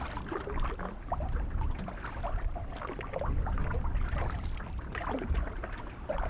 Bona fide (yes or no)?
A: yes